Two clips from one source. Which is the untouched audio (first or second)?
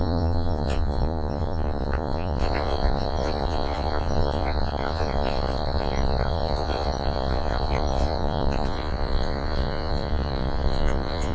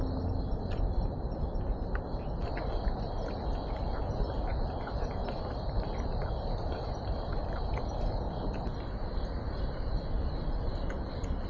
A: second